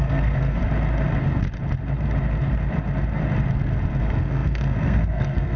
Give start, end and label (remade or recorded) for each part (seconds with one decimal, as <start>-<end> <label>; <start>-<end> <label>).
0.0-0.6 remade; 0.6-4.0 recorded; 4.0-5.6 remade